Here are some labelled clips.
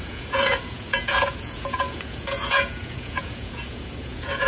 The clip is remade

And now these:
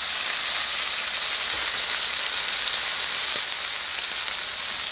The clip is recorded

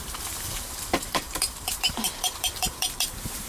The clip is remade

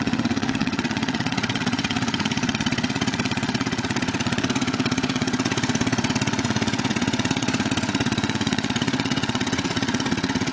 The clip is remade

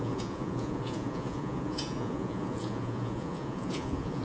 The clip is remade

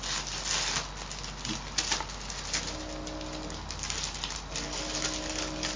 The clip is recorded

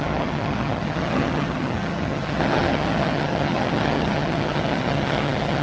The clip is remade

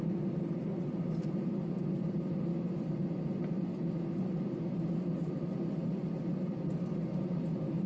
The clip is recorded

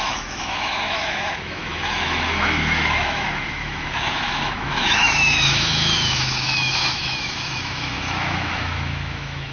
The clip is remade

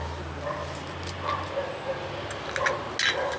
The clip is recorded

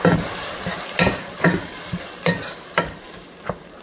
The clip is recorded